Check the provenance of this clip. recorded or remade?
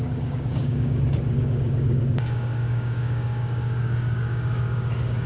remade